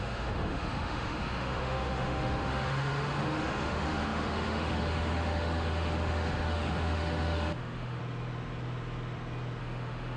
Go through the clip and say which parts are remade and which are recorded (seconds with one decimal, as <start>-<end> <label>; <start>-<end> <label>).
0.0-8.0 remade; 8.0-9.6 recorded; 9.6-10.2 remade